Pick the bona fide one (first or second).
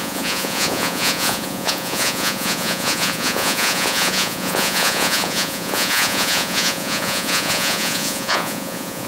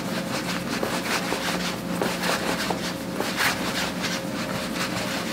second